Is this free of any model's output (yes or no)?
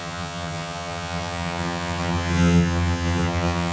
no